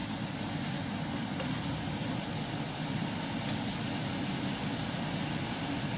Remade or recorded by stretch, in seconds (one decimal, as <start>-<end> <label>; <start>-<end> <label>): 0.0-6.0 recorded